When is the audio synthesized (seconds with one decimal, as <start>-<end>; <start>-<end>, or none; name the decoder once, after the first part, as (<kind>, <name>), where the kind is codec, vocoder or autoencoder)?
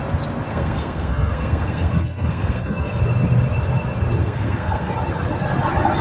0.5-3.0 (codec, SNAC); 4.2-4.9